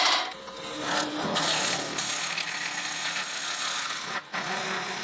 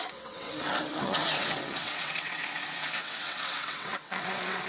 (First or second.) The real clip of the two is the first